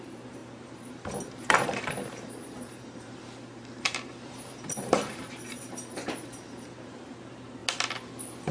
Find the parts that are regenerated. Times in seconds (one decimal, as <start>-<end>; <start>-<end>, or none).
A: 0.0-7.6